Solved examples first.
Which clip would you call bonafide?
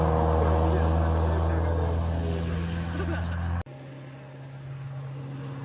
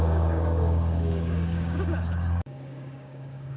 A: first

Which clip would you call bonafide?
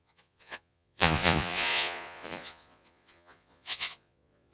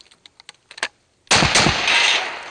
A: second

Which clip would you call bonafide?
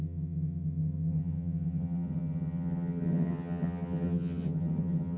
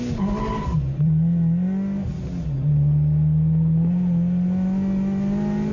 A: second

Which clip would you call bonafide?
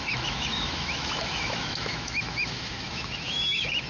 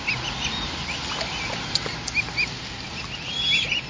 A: second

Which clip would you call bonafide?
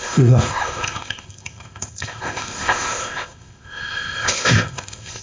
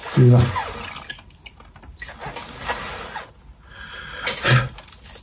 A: second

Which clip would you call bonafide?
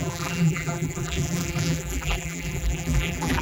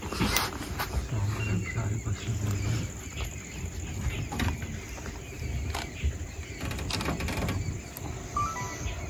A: second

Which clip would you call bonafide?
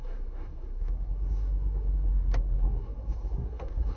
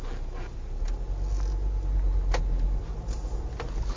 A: second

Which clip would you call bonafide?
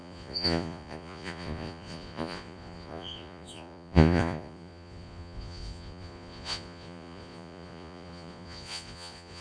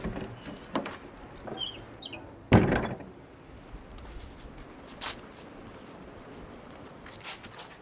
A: second